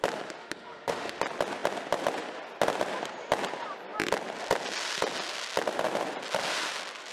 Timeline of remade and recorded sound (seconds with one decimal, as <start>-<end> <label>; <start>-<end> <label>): 0.0-0.4 recorded; 0.4-1.2 remade; 1.2-7.1 recorded

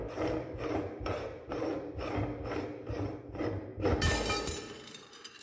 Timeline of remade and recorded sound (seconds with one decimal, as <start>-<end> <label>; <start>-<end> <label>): 0.0-1.7 remade; 1.7-2.8 recorded; 2.8-3.7 remade; 3.7-4.3 recorded; 4.3-5.4 remade

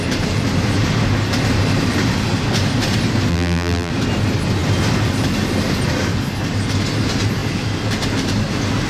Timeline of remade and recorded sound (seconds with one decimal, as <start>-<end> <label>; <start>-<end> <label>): 0.0-3.3 recorded; 3.3-3.9 remade; 3.9-8.9 recorded

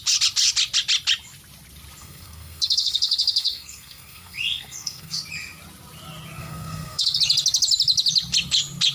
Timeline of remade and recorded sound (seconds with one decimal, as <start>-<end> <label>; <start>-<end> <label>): 0.0-2.0 recorded; 2.0-5.2 remade; 5.2-6.4 recorded; 6.4-7.2 remade; 7.2-8.9 recorded

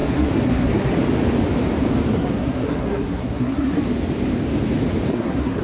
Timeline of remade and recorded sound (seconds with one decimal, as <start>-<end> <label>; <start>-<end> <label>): 0.0-0.9 remade; 0.9-2.1 recorded; 2.1-3.8 remade; 3.8-5.1 recorded; 5.1-5.6 remade

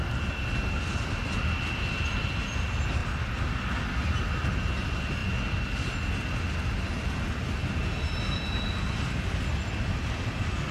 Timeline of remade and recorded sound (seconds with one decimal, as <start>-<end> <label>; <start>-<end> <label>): 0.0-10.7 recorded